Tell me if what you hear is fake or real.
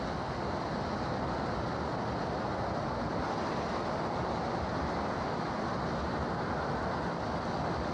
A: real